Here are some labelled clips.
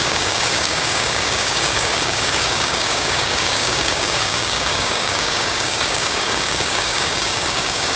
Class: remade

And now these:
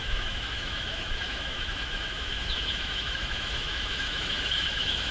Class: remade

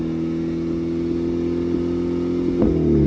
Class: recorded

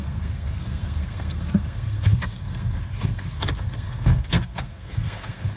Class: remade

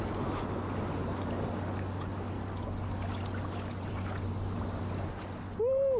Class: recorded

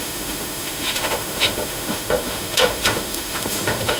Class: remade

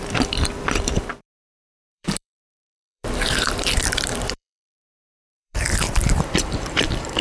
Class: remade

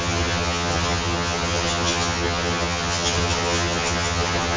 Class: remade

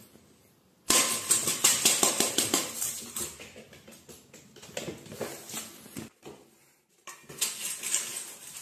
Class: recorded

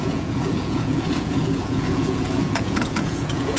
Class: remade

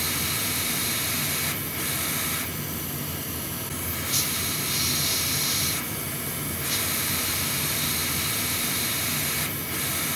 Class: recorded